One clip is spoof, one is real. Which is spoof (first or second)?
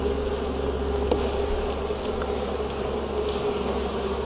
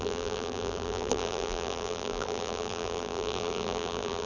second